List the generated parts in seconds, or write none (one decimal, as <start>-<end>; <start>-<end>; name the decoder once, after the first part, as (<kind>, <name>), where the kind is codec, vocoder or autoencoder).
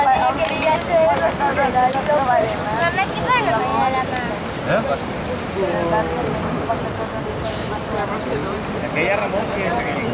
none